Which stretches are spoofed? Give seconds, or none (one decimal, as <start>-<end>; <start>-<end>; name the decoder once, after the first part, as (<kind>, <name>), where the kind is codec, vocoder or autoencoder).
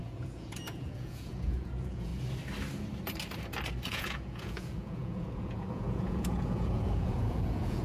0.0-2.1 (vocoder, Vocos); 3.9-7.8